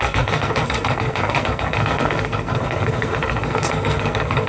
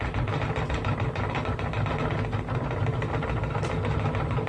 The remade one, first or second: first